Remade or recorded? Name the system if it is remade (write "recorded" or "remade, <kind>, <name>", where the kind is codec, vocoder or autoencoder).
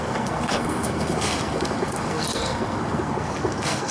remade, codec, SNAC